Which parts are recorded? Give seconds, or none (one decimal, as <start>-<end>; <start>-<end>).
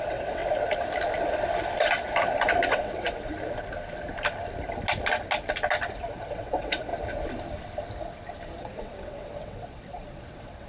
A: 0.4-2.7; 3.3-6.1; 6.9-8.6